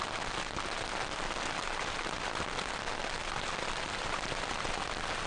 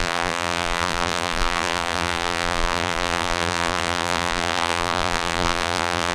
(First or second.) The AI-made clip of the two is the second